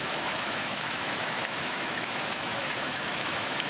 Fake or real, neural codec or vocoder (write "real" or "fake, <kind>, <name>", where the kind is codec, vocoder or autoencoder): fake, autoencoder, DAC-VAE